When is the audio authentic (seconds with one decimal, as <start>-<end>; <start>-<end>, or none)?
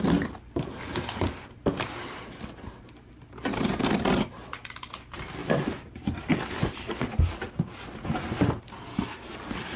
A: 0.0-9.8